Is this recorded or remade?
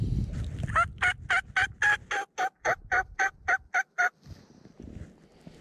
recorded